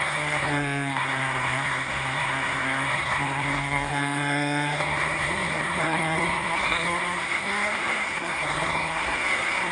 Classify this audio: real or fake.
fake